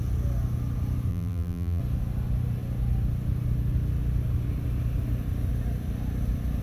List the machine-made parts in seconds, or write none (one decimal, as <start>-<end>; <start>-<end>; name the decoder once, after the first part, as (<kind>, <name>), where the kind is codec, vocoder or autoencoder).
1.1-1.8 (vocoder, BigVGAN v2)